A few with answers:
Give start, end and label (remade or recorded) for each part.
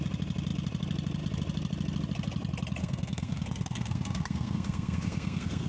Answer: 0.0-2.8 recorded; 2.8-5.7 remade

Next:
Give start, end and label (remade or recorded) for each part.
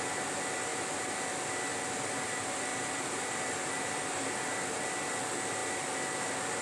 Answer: 0.0-0.7 recorded; 0.7-1.3 remade; 1.3-2.7 recorded; 2.7-3.2 remade; 3.2-6.6 recorded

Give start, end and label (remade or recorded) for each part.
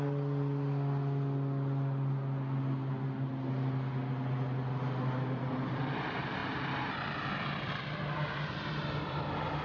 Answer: 0.0-9.6 recorded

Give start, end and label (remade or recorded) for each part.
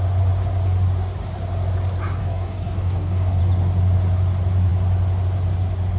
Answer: 0.0-2.2 recorded; 2.2-3.4 remade; 3.4-6.0 recorded